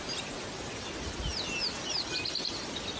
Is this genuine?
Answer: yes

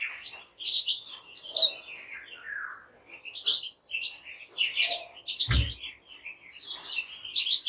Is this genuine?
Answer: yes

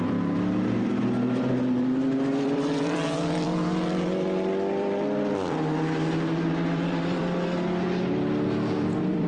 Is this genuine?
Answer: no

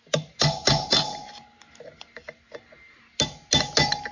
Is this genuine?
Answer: yes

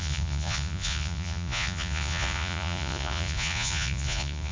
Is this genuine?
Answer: no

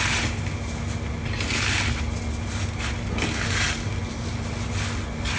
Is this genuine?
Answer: yes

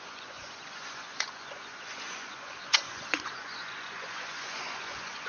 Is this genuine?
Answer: no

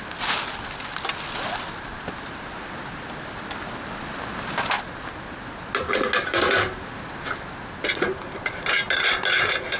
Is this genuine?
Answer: yes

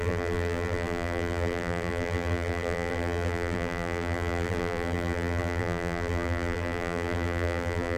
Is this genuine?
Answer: no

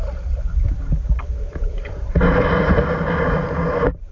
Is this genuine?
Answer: yes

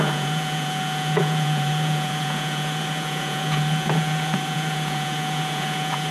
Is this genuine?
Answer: no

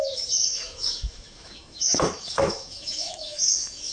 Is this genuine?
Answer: no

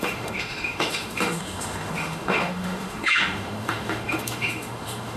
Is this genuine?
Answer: no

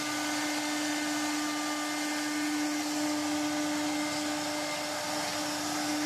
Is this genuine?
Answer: yes